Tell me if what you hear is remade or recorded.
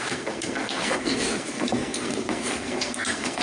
remade